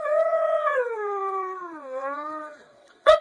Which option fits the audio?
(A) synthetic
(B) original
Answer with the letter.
A